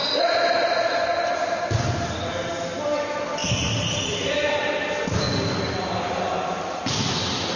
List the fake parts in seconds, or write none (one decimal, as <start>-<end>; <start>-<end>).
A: none